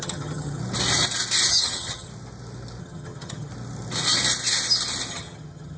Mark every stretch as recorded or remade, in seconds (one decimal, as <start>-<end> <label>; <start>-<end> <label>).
0.0-0.6 remade; 0.6-1.5 recorded; 1.5-2.1 remade; 2.1-2.8 recorded; 2.8-3.5 remade; 3.5-5.1 recorded; 5.1-5.8 remade